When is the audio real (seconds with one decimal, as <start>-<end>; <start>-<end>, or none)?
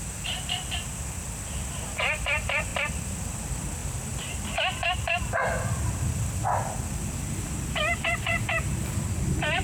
none